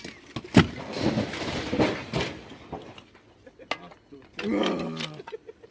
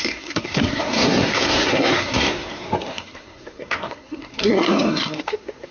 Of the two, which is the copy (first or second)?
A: second